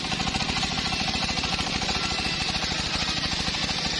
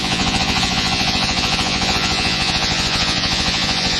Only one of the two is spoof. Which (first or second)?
second